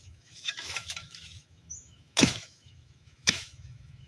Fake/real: fake